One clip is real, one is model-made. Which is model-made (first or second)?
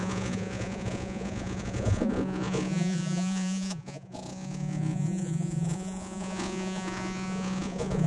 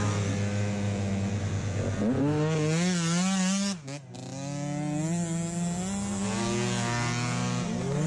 first